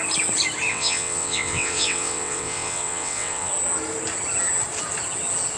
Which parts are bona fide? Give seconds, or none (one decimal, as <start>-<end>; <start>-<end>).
0.0-0.7; 3.5-5.6